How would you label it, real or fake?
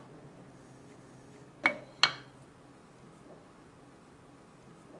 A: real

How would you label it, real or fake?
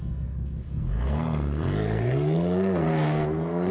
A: fake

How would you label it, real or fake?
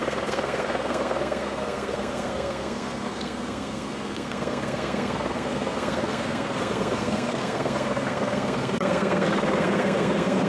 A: fake